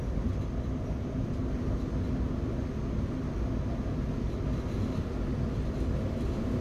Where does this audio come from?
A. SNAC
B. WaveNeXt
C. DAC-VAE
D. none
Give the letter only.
D